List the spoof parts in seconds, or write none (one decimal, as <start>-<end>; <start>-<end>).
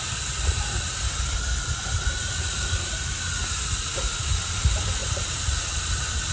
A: none